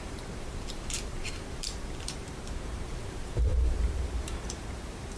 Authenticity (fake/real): fake